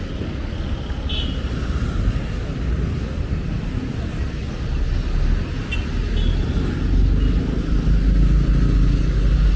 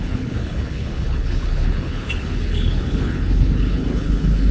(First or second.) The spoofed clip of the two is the second